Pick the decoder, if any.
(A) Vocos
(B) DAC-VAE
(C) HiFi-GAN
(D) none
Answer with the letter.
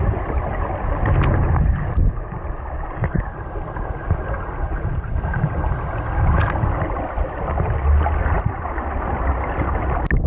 D